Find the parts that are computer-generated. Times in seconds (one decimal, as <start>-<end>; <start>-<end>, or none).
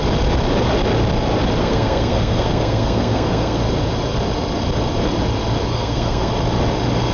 1.6-3.6; 5.7-6.3